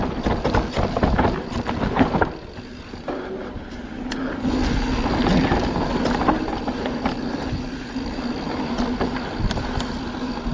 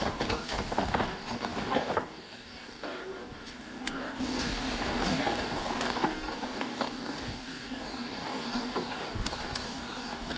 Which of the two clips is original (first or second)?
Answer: first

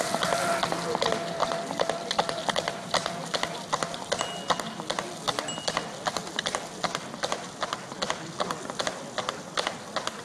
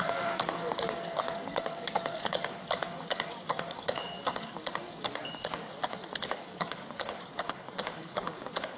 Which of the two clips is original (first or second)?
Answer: first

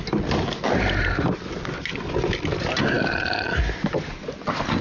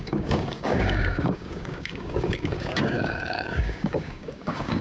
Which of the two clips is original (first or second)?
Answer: first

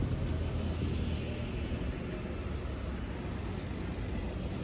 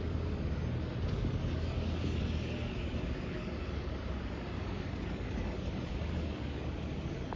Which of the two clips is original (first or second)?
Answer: first